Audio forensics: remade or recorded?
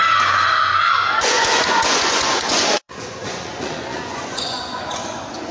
remade